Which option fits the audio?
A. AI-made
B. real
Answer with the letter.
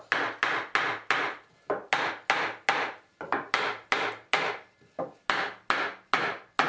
B